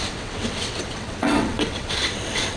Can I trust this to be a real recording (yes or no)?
no